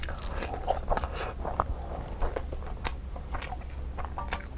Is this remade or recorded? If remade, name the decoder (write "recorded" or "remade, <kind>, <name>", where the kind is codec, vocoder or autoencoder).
recorded